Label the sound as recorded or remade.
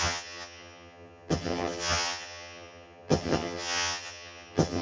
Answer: remade